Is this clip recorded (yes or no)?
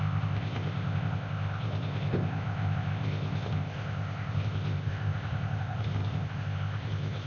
no